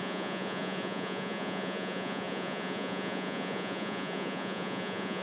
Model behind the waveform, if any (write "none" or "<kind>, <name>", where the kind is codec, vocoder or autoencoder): vocoder, Vocos